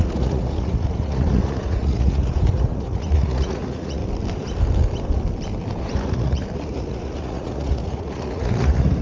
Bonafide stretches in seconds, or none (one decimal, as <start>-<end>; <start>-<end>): 4.0-5.8